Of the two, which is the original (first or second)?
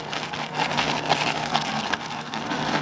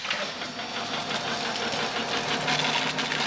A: second